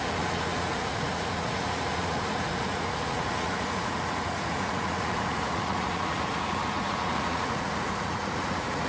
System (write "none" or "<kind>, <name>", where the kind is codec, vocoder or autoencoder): vocoder, Vocos